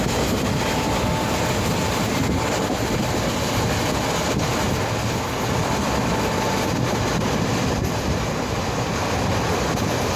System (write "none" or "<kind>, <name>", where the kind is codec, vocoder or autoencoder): none